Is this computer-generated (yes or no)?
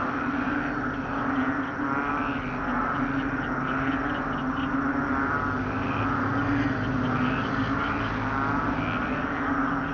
no